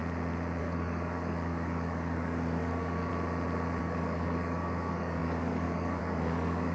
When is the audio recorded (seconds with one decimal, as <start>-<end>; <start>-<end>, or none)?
0.0-0.6; 3.1-3.8